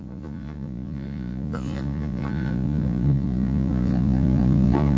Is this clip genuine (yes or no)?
no